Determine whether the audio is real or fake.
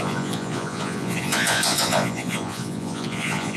fake